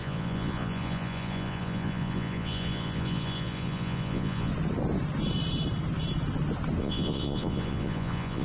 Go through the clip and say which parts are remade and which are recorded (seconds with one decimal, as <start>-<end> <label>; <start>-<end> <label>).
0.0-4.5 remade; 4.5-6.8 recorded; 6.8-8.4 remade